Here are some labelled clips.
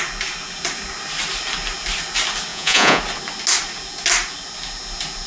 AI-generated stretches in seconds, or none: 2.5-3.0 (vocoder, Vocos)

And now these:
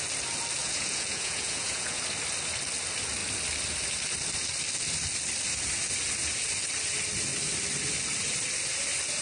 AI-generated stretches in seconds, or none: 0.6-2.0 (vocoder, Vocos)

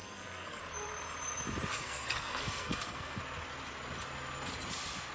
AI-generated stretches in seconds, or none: 0.0-0.6 (codec, SNAC); 1.7-3.2